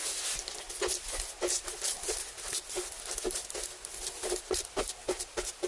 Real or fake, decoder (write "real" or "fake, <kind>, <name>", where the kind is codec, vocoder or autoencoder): real